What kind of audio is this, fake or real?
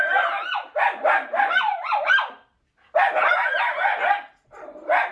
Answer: real